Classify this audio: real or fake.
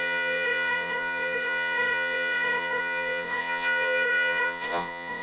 fake